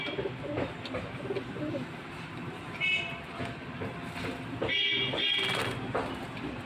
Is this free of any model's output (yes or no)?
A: yes